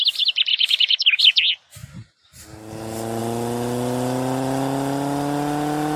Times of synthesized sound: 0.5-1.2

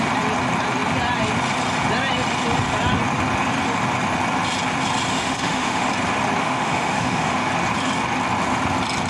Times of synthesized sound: 5.1-5.9; 6.4-7.5

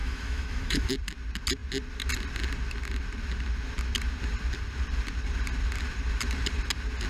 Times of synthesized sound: 0.0-0.9